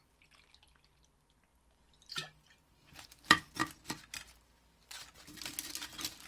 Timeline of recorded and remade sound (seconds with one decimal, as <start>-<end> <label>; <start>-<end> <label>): 0.0-6.3 recorded